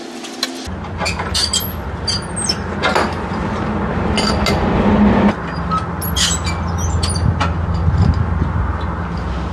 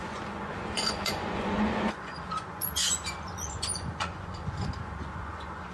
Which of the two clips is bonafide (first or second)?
first